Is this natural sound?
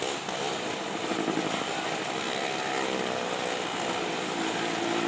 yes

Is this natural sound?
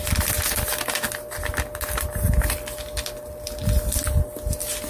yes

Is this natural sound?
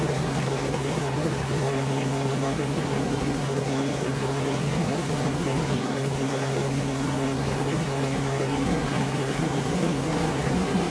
no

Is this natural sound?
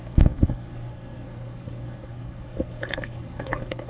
no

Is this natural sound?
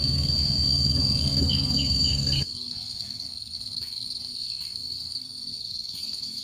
no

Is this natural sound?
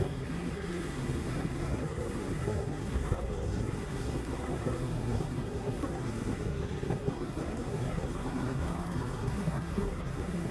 no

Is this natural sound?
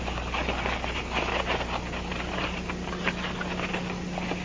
yes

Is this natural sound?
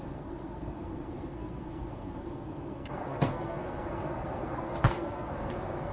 no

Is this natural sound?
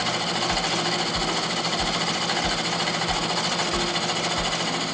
yes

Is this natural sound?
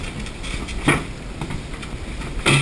yes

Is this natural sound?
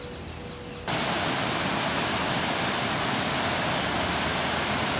yes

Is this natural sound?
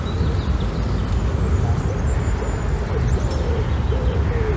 yes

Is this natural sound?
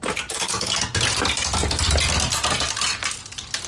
yes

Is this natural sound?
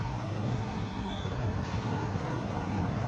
no